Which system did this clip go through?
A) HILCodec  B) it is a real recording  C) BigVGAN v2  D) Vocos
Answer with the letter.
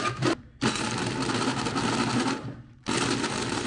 B